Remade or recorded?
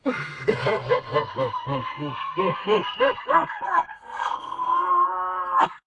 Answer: remade